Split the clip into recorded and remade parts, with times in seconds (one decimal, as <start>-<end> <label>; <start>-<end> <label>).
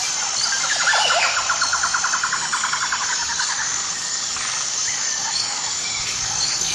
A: 0.0-3.0 recorded; 3.0-6.7 remade